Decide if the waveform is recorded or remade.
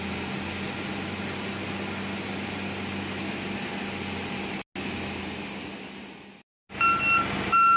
recorded